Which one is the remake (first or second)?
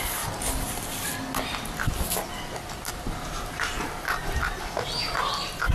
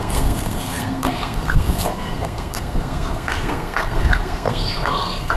second